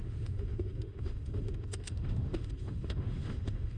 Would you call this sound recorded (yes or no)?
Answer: no